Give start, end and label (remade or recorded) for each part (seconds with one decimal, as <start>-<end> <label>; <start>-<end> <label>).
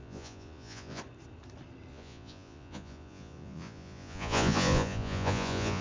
0.0-1.0 remade; 1.0-1.9 recorded; 1.9-5.8 remade